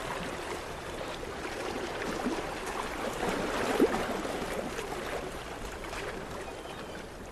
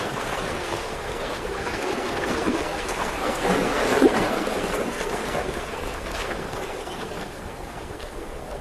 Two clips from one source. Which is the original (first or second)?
first